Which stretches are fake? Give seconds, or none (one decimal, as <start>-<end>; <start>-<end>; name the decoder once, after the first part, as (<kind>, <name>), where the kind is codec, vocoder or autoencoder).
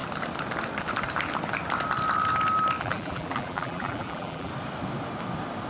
2.8-4.5 (vocoder, BigVGAN v2)